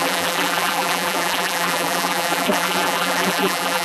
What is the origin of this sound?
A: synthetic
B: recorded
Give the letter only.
A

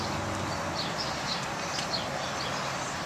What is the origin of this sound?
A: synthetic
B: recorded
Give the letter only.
B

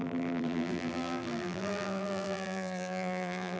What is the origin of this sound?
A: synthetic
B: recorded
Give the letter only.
A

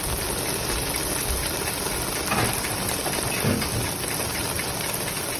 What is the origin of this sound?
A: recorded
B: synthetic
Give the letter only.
A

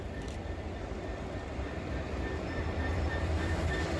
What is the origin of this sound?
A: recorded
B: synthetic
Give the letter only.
B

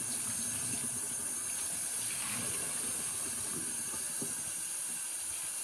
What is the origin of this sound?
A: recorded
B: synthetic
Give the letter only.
A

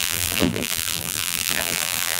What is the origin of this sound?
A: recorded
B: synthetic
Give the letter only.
B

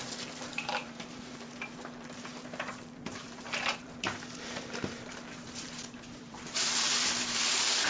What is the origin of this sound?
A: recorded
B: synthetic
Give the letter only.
B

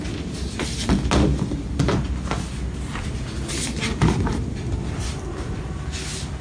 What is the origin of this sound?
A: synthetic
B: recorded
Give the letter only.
B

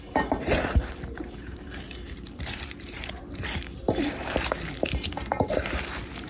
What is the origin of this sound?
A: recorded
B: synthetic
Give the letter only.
B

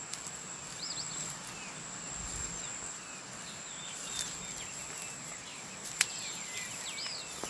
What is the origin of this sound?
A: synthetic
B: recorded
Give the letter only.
B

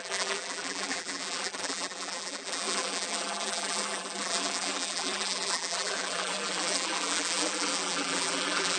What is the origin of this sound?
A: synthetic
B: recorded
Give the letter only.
A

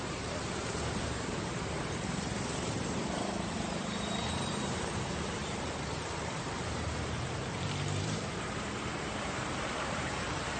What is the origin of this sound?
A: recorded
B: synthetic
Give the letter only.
B